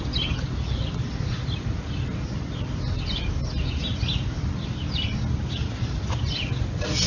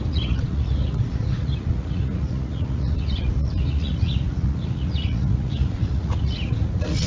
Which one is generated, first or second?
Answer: second